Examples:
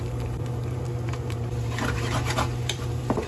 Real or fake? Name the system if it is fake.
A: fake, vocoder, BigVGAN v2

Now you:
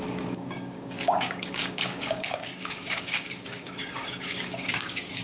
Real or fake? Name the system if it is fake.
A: fake, codec, DAC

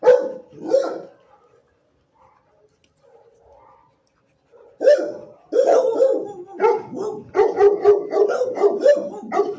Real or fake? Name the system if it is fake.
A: real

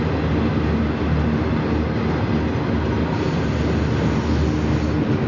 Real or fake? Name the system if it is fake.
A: real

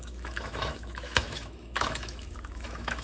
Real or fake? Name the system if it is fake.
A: fake, autoencoder, DAC-VAE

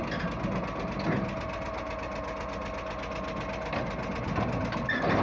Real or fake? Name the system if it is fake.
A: real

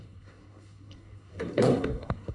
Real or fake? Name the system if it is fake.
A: fake, codec, SNAC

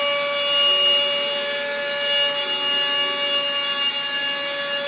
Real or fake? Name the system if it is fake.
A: real